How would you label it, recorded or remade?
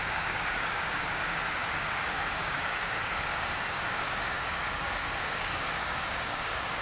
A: remade